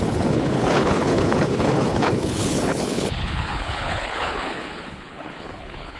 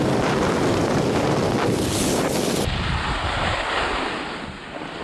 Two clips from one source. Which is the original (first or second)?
second